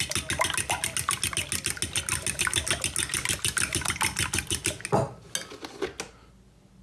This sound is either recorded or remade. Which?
recorded